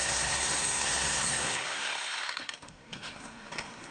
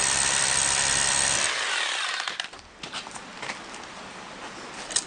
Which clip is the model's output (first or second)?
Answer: first